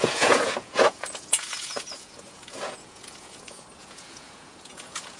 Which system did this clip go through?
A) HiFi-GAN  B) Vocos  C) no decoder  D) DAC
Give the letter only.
B